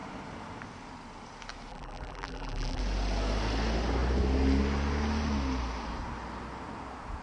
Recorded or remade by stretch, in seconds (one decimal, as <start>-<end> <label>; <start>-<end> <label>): 0.0-1.7 recorded; 1.7-2.8 remade; 2.8-7.2 recorded